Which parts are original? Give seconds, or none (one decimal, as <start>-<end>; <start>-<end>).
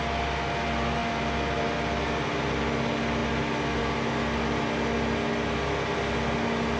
0.0-6.8